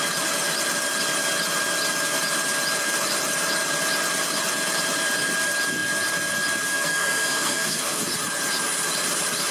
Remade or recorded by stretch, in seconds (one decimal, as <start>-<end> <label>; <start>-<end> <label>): 0.0-6.7 recorded; 6.7-8.0 remade; 8.0-9.5 recorded